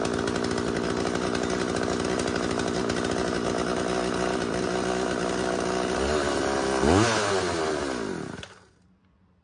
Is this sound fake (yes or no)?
no